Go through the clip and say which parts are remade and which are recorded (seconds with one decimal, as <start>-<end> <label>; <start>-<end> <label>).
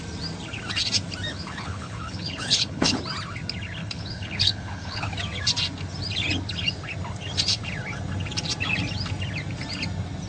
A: 0.0-1.3 recorded; 1.3-3.0 remade; 3.0-3.8 recorded; 3.8-5.1 remade; 5.1-10.3 recorded